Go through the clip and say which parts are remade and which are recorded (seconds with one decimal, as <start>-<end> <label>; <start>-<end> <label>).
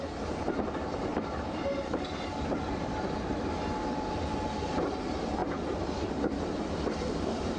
0.0-1.1 recorded; 1.1-2.5 remade; 2.5-5.4 recorded; 5.4-6.4 remade; 6.4-7.6 recorded